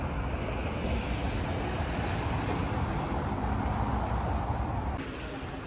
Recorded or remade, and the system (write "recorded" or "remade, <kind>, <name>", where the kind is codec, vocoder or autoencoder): recorded